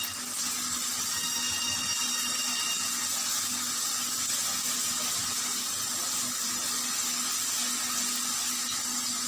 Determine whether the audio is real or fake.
real